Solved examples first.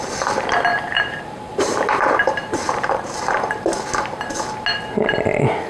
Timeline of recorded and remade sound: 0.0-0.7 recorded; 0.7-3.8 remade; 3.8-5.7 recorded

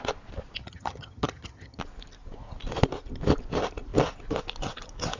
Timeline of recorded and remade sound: 0.0-0.6 recorded; 0.6-1.8 remade; 1.8-5.2 recorded

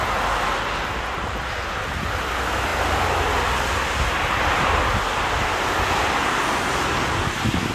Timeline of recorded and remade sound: 0.0-7.7 recorded